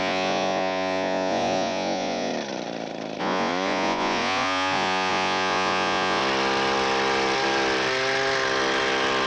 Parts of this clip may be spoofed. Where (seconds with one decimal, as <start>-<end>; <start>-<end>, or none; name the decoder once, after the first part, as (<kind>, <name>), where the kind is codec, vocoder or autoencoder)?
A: 0.0-2.3 (vocoder, Vocos); 3.2-6.2